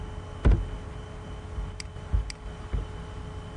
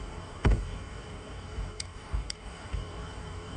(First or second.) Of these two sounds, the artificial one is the second